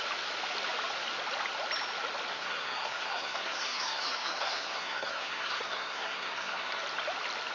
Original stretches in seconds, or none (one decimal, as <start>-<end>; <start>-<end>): 0.0-2.3; 6.8-7.5